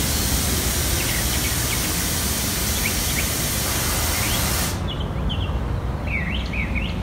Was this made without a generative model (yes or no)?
yes